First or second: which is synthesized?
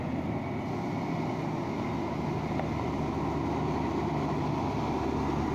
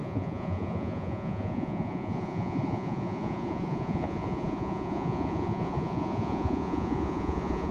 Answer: second